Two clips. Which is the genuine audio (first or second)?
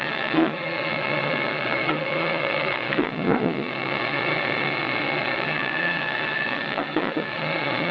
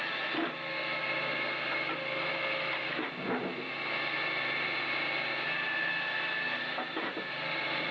second